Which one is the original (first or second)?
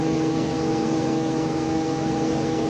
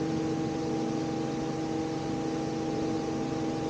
second